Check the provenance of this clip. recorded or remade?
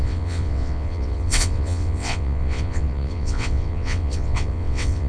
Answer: remade